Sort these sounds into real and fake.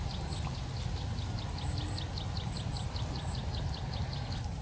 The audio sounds real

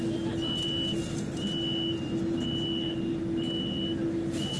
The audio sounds real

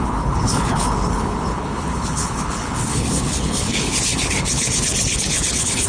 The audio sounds fake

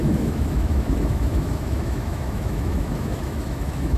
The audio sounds fake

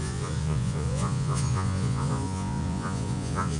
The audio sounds fake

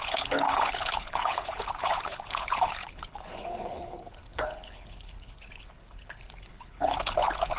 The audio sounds fake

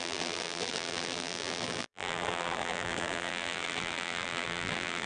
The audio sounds fake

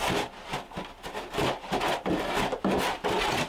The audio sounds real